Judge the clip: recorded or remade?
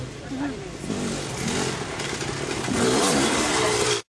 recorded